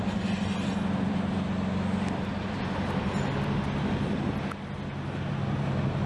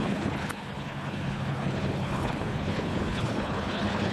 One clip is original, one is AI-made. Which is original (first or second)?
first